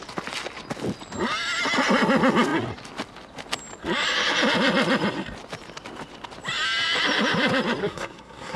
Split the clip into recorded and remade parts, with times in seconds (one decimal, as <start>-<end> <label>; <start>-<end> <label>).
0.0-7.8 recorded; 7.8-8.6 remade